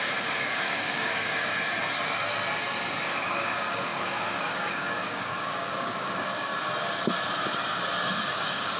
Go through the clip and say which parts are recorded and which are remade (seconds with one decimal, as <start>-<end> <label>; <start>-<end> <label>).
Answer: 0.0-1.5 remade; 1.5-3.0 recorded; 3.0-6.5 remade; 6.5-8.1 recorded; 8.1-8.8 remade